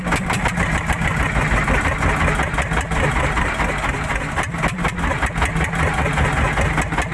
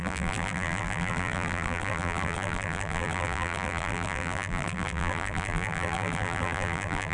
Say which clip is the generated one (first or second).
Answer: second